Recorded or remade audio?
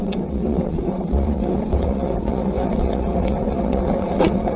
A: remade